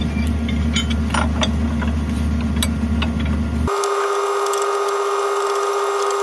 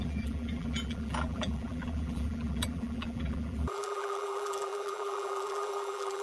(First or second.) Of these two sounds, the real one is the first